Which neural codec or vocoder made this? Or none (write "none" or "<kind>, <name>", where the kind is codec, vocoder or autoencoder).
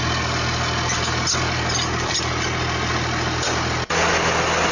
none